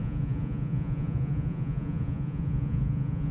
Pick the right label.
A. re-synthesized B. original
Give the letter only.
A